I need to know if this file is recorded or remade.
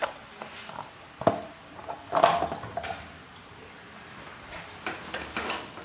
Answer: recorded